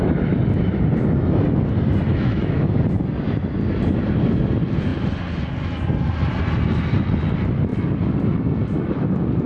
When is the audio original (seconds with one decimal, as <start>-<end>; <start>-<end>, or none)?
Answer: 0.0-2.1; 2.7-9.5